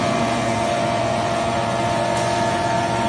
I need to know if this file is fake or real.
fake